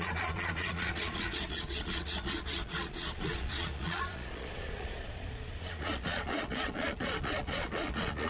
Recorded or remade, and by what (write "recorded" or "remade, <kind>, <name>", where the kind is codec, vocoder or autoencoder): remade, vocoder, Vocos